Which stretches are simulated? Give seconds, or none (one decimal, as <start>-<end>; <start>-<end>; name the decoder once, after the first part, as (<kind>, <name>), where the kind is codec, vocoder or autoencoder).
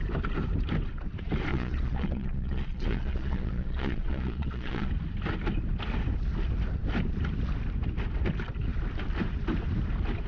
1.5-4.9 (vocoder, Vocos)